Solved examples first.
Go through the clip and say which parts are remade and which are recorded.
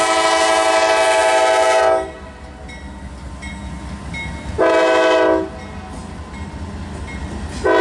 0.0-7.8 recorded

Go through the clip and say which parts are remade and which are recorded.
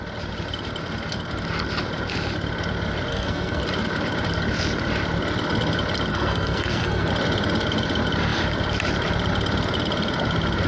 0.0-3.1 recorded; 3.1-3.6 remade; 3.6-6.1 recorded; 6.1-7.1 remade; 7.1-10.7 recorded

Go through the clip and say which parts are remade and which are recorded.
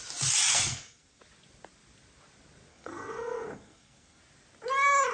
0.0-0.5 recorded; 0.5-1.2 remade; 1.2-2.7 recorded; 2.7-4.2 remade; 4.2-5.1 recorded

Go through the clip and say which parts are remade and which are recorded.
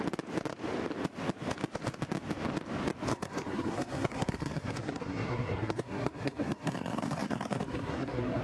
0.0-3.1 recorded; 3.1-8.4 remade